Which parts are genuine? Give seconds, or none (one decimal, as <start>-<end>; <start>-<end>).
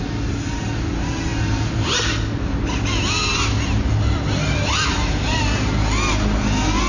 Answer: 0.0-6.9